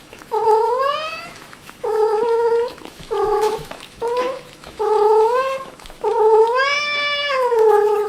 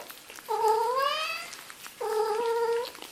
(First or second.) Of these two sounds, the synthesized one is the first